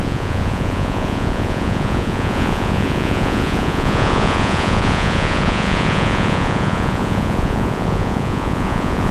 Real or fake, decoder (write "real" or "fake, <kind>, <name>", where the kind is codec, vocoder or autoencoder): fake, vocoder, Vocos